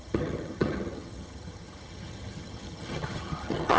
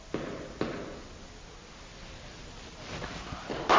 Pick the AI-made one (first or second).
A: first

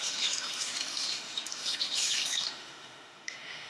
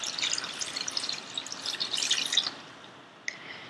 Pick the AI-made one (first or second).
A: first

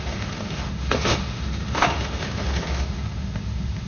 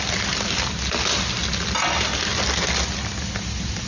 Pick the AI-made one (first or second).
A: first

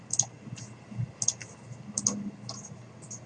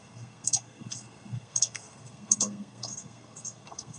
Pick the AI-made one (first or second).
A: second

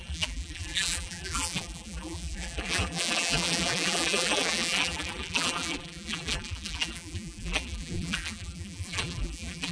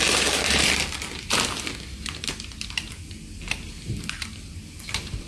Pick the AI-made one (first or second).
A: first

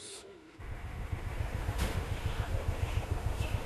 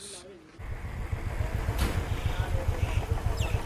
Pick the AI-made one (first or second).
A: first